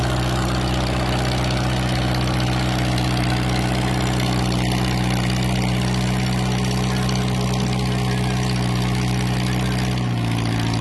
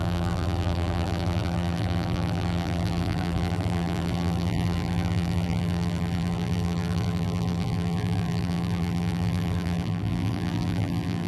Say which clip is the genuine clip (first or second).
first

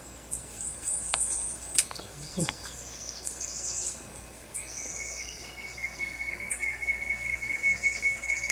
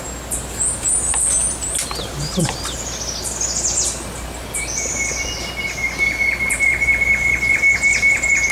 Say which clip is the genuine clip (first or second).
second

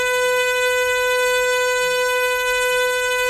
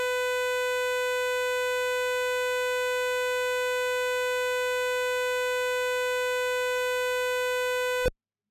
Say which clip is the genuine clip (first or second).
second